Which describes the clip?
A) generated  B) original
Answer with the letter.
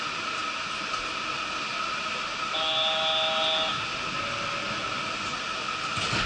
B